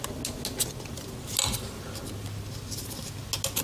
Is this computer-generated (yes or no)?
no